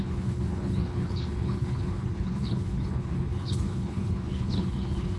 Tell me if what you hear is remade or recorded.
remade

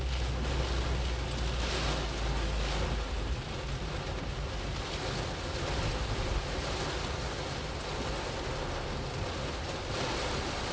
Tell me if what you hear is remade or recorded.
recorded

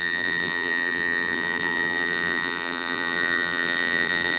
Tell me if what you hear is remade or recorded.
remade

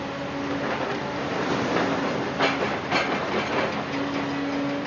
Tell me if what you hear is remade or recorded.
recorded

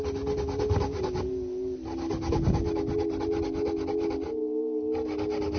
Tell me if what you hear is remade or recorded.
recorded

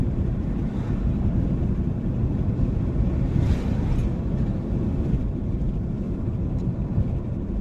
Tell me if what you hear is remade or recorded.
remade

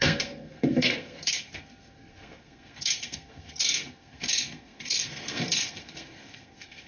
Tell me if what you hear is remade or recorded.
remade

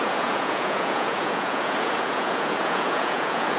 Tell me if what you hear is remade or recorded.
remade